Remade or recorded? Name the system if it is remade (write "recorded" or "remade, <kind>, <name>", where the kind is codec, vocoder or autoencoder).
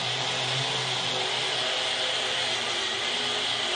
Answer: recorded